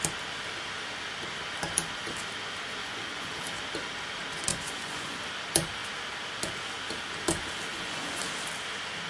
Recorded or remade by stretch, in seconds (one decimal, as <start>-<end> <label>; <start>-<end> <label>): 0.0-2.8 recorded; 2.8-3.4 remade; 3.4-4.5 recorded; 4.5-5.2 remade; 5.2-7.7 recorded; 7.7-8.2 remade; 8.2-9.1 recorded